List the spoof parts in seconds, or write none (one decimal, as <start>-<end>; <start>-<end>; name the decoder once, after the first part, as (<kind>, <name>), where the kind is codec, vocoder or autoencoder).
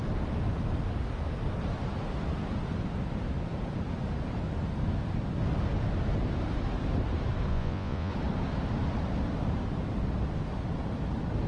7.5-8.1 (vocoder, Vocos)